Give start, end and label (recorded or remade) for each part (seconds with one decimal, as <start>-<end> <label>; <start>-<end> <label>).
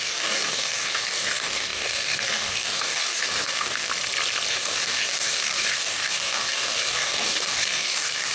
0.0-3.9 remade; 3.9-4.5 recorded; 4.5-8.3 remade